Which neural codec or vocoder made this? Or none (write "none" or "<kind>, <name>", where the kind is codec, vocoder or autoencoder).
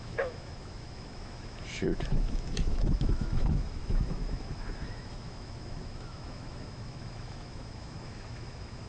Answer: autoencoder, DAC-VAE